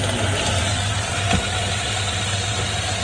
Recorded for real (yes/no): yes